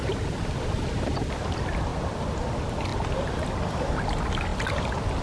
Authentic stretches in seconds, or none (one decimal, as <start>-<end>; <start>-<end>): 0.0-5.2